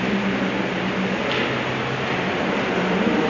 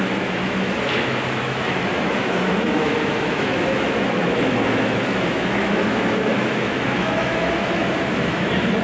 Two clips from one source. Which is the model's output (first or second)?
second